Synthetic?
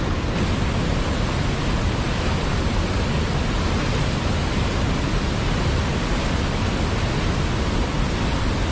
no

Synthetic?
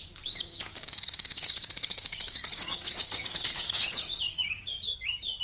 yes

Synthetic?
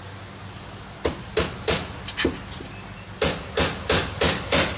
no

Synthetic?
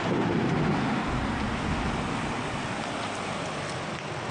no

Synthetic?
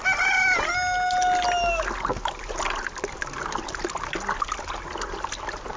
no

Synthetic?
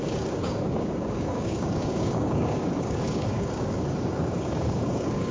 yes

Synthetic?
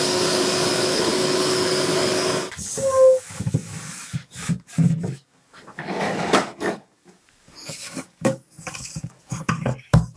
yes